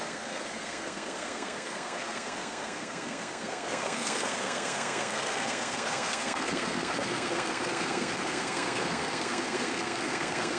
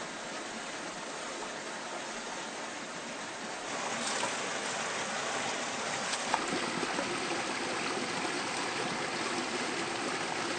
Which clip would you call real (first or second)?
second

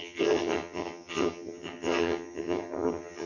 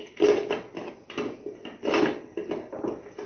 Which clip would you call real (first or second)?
second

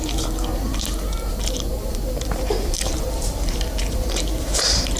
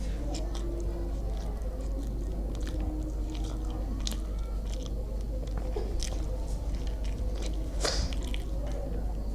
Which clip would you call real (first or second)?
second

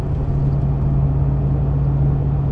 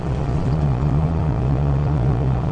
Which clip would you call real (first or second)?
first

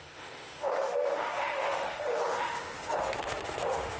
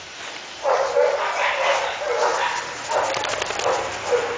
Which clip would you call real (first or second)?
second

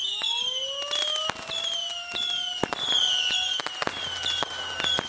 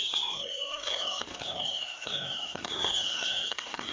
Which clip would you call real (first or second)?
first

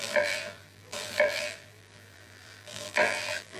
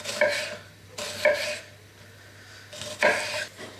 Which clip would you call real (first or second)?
second